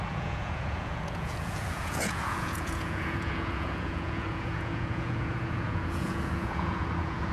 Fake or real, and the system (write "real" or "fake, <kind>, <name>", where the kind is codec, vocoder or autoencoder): fake, vocoder, Vocos